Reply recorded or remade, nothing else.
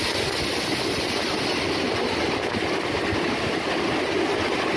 recorded